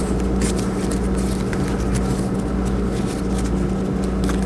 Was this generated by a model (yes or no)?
no